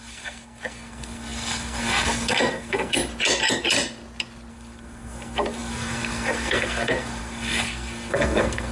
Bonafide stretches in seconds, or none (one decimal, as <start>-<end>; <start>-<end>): 3.0-4.5